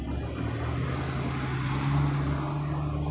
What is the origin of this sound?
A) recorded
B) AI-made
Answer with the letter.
A